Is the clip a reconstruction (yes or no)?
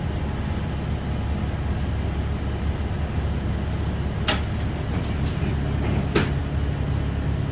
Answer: no